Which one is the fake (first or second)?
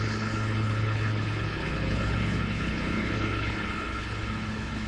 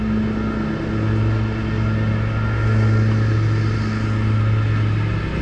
first